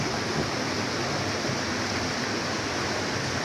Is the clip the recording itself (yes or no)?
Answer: yes